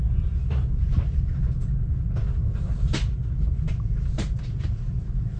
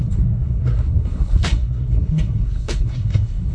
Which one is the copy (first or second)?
second